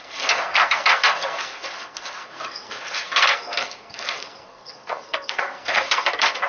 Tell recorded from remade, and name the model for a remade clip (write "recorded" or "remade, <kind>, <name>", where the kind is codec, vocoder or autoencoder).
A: remade, codec, SNAC